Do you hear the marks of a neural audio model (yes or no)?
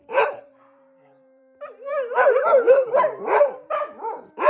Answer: yes